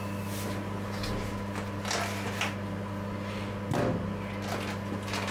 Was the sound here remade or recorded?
recorded